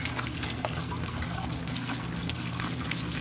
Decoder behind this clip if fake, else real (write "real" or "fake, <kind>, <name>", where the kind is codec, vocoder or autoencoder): fake, codec, SNAC